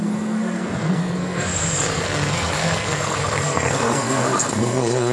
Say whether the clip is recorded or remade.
remade